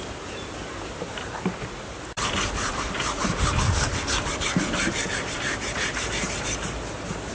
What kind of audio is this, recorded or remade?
recorded